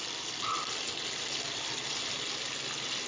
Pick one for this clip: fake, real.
real